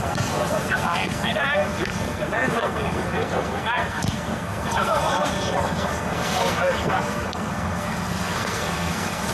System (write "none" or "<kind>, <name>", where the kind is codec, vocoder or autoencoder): codec, SNAC